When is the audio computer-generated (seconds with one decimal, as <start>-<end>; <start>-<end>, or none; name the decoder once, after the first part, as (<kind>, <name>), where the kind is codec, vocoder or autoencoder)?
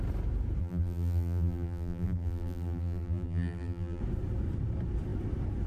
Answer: 0.6-4.0 (vocoder, BigVGAN v2)